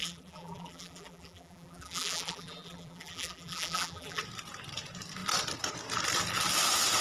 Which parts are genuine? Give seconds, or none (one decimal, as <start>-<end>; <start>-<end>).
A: 4.2-7.0